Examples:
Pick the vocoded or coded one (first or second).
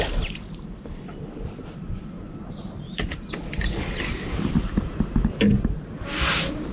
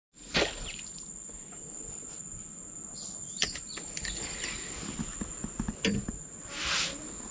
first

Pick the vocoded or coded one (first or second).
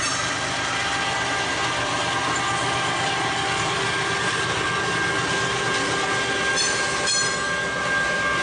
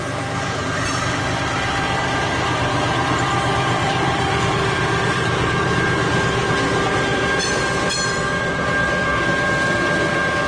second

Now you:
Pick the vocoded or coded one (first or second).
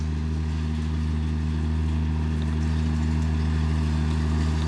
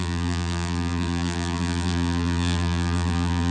second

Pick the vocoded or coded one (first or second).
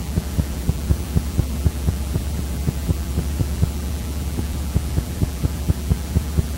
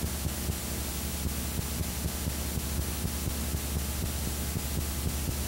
first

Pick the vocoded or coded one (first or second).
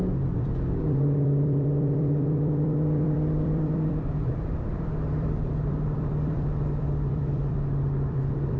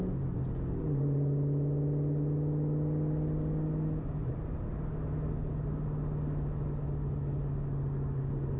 first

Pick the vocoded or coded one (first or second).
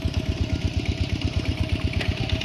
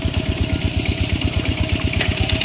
first